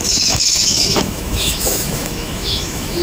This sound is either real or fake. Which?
fake